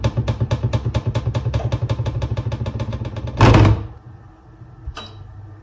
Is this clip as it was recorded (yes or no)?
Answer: yes